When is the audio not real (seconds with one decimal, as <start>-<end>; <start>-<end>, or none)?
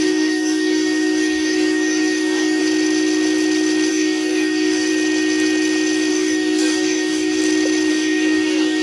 0.0-2.6; 3.9-4.9; 6.1-7.4; 7.9-8.8